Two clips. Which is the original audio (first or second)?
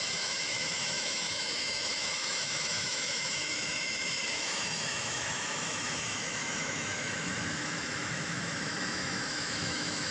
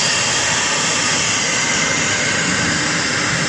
second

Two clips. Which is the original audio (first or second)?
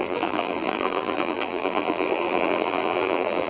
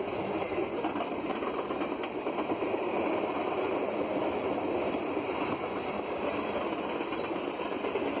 second